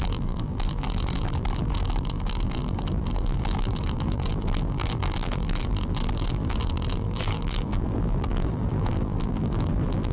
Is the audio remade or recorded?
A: remade